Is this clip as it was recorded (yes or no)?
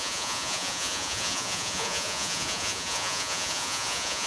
no